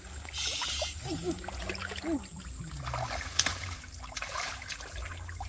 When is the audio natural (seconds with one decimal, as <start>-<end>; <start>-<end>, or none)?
0.0-5.5

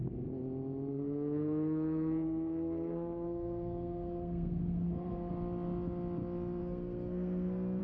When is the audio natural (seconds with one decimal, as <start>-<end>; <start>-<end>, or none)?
0.0-0.9; 5.3-6.6

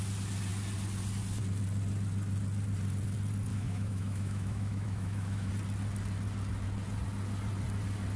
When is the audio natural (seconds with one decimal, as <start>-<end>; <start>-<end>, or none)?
0.0-3.5; 5.5-8.2

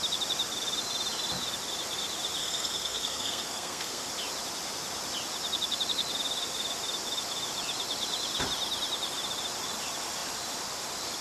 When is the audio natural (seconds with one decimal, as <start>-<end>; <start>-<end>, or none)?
0.0-2.4; 4.1-11.2

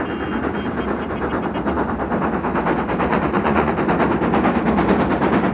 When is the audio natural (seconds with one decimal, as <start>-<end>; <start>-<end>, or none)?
0.0-3.1; 3.7-5.5

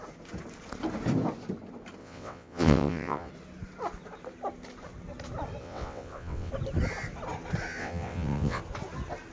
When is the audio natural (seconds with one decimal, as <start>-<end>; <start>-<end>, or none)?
0.0-2.0; 3.3-5.6; 6.5-7.8; 8.6-9.3

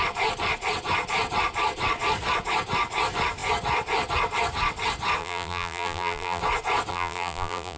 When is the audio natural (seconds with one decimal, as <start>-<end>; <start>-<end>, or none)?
0.0-5.2; 6.4-6.9

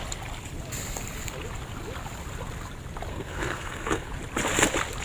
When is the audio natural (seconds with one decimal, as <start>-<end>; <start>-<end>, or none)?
0.0-3.1; 4.1-5.0